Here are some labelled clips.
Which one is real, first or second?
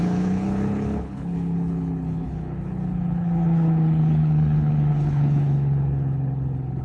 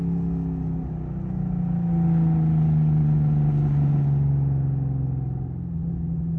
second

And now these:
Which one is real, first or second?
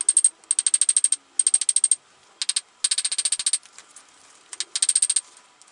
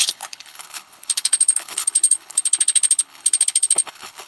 first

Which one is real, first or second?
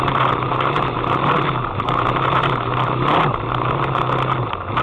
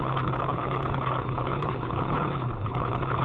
first